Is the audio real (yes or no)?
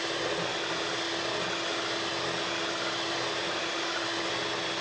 yes